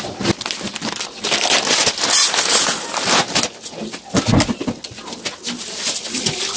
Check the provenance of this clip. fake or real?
real